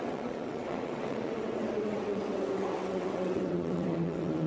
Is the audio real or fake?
fake